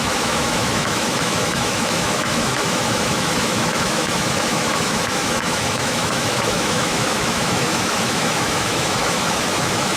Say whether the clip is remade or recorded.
remade